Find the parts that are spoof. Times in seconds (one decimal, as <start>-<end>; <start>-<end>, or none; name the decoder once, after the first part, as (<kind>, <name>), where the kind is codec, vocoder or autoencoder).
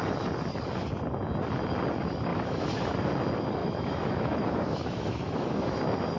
2.3-3.1 (autoencoder, DAC-VAE); 3.6-5.8